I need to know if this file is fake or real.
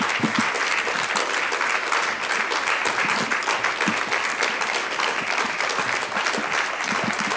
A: real